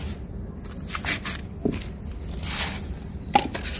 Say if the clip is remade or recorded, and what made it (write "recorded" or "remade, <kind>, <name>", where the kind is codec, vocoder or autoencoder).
recorded